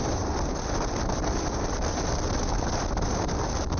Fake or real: fake